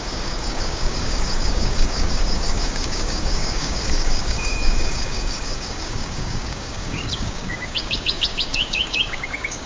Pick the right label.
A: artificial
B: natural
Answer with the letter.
A